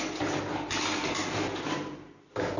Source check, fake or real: real